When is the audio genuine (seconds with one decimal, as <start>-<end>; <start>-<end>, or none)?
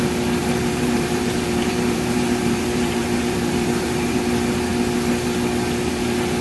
0.0-0.4; 4.2-6.4